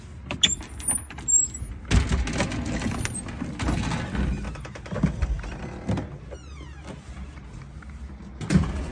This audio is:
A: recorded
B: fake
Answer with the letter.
A